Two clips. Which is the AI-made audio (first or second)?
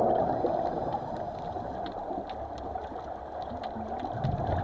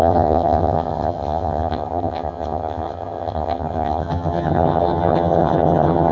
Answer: second